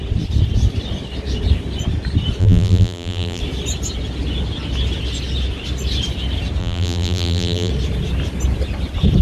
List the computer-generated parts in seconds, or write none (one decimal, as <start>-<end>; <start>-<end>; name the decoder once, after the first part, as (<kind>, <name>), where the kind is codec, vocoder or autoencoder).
2.4-3.4 (vocoder, BigVGAN v2); 6.6-7.7